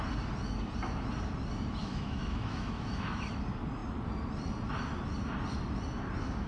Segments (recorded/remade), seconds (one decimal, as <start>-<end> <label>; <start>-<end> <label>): 0.0-1.8 recorded; 1.8-3.3 remade; 3.3-6.5 recorded